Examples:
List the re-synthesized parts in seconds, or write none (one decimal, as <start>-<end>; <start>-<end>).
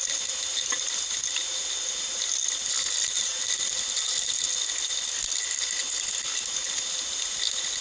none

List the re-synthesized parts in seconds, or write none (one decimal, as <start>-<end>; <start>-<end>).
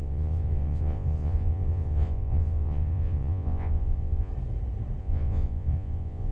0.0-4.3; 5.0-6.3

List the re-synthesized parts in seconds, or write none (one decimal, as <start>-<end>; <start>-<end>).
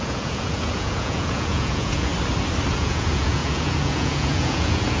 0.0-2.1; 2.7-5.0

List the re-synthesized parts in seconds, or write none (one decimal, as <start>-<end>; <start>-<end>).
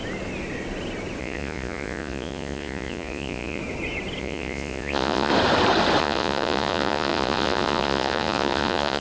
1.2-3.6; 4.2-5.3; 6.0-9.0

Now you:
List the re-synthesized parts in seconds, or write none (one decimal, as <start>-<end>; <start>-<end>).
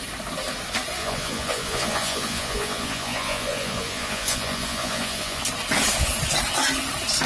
1.0-5.4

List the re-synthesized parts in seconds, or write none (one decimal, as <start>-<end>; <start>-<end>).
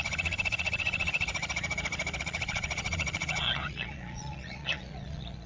0.0-1.4; 2.2-5.5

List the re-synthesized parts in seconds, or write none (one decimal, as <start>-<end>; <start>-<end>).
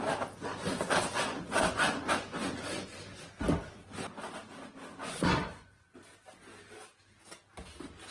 0.5-3.0; 5.0-6.0